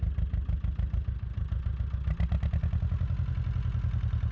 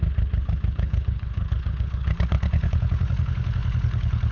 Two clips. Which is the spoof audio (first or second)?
second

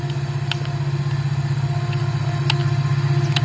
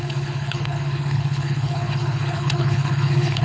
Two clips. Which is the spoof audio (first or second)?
second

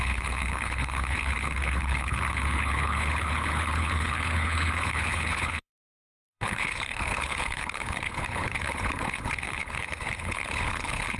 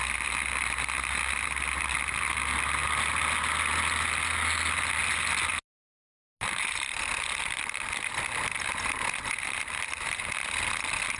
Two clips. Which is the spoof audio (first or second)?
first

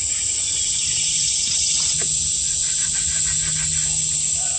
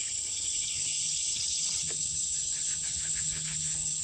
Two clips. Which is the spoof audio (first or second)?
second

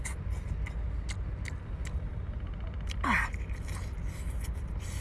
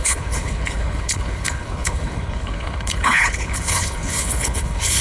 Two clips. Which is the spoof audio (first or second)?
second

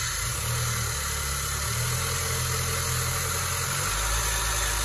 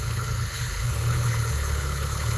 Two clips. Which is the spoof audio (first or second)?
second